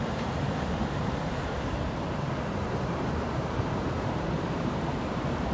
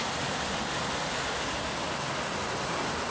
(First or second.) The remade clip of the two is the first